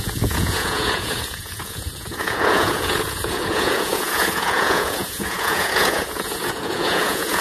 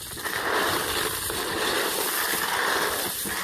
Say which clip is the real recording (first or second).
second